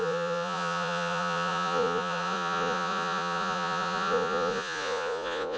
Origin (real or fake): fake